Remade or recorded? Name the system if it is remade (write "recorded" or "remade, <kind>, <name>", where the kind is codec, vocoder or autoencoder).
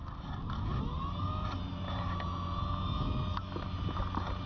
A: recorded